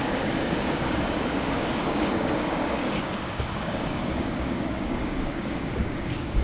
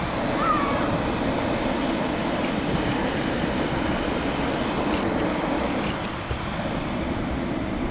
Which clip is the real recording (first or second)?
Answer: second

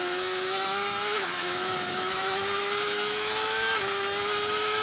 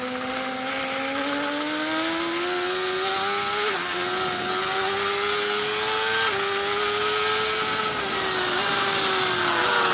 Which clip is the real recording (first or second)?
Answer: second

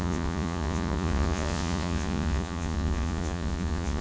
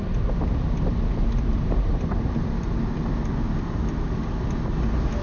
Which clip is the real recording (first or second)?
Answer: second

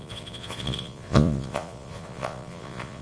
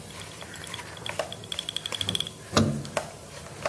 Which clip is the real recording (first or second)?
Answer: second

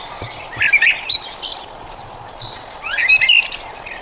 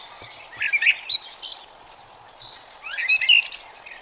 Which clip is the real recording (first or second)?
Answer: second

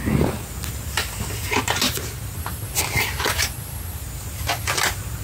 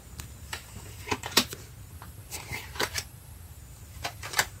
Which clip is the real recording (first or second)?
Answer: first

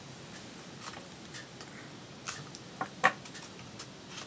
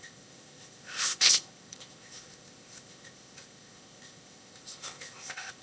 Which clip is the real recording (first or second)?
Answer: first